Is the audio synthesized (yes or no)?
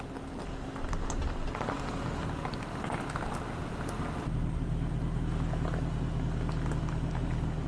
no